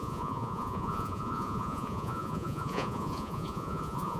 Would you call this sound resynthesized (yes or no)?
yes